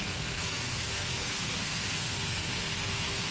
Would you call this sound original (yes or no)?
no